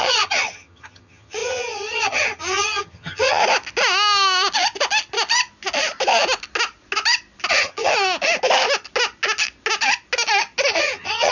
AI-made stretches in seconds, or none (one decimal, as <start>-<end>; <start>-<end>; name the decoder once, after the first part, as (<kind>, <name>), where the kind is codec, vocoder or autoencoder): 0.0-3.4 (vocoder, HiFi-GAN); 7.5-7.9; 10.7-11.3